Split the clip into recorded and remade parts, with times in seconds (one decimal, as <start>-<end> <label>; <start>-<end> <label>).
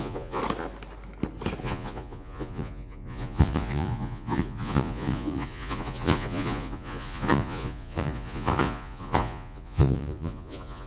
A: 0.0-0.4 remade; 0.4-1.6 recorded; 1.6-10.9 remade